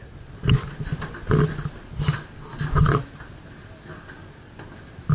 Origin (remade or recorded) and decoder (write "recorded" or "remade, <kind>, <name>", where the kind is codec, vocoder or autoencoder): recorded